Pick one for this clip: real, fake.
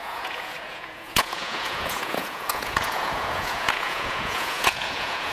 fake